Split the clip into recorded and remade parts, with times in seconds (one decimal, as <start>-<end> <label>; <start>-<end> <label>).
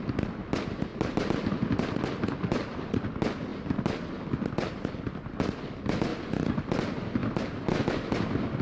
0.0-8.6 recorded